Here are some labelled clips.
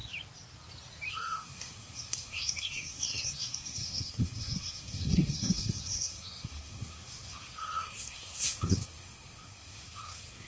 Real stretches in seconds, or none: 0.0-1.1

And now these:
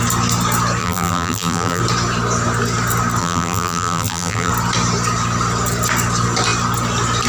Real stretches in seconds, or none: 0.0-0.8; 1.8-3.2; 4.5-7.3